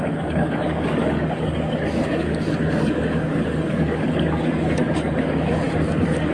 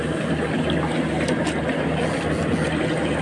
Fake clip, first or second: first